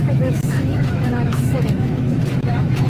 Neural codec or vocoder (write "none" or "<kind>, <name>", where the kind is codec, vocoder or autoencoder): autoencoder, DAC-VAE